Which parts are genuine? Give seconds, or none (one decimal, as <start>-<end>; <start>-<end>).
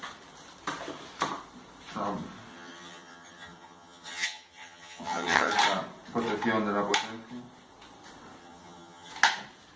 0.0-2.5; 5.5-8.4; 9.1-9.8